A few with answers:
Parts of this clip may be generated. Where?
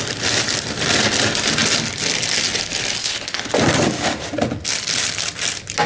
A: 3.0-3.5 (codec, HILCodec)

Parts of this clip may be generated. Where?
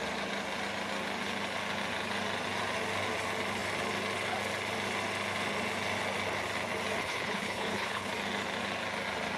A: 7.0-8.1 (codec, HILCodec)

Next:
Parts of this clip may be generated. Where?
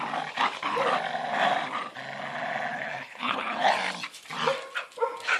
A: 2.7-3.7 (codec, HILCodec)